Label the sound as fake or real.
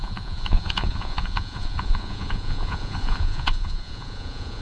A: fake